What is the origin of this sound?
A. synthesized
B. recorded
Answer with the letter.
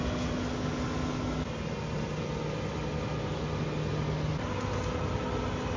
B